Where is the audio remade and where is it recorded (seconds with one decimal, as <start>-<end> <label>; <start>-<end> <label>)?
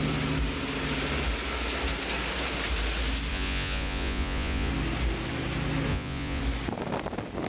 0.0-3.3 recorded; 3.3-4.7 remade; 4.7-5.9 recorded; 5.9-6.4 remade; 6.4-7.5 recorded